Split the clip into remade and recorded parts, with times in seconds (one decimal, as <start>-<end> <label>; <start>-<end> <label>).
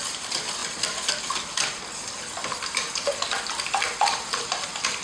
0.0-5.0 recorded